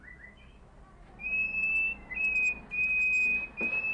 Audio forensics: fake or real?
real